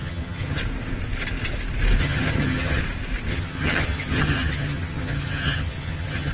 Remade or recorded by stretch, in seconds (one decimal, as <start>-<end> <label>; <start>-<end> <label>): 0.0-0.6 remade; 0.6-2.0 recorded; 2.0-2.8 remade; 2.8-3.3 recorded; 3.3-6.3 remade

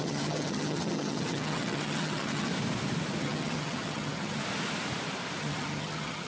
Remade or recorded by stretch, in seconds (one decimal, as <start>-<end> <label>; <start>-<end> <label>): 0.0-2.5 remade; 2.5-3.2 recorded; 3.2-4.4 remade; 4.4-5.4 recorded; 5.4-6.3 remade

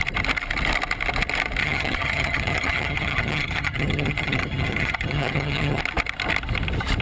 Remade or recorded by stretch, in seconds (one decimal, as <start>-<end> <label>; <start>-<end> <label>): 0.0-1.6 recorded; 1.6-5.8 remade; 5.8-7.0 recorded

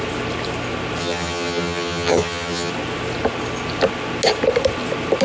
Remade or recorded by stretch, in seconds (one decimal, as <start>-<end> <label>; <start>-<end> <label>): 0.0-1.0 recorded; 1.0-2.7 remade; 2.7-5.2 recorded

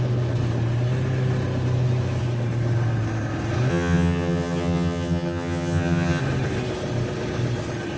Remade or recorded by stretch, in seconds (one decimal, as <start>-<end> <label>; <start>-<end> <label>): 0.0-3.7 recorded; 3.7-6.2 remade; 6.2-8.0 recorded

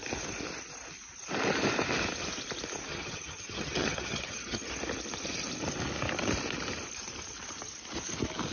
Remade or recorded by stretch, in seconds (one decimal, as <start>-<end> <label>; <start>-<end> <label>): 0.0-2.9 recorded; 2.9-4.7 remade; 4.7-8.5 recorded

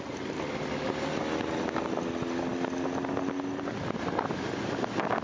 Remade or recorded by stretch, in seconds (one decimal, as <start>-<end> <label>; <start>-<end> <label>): 0.0-5.2 recorded

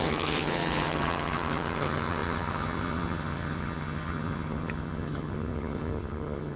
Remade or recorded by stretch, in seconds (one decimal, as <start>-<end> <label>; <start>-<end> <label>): 0.0-6.6 remade